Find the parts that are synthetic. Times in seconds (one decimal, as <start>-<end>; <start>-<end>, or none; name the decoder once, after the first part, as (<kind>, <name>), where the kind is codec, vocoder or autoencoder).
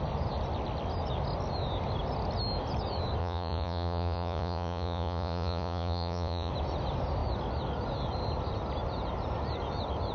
3.2-6.5 (vocoder, Vocos)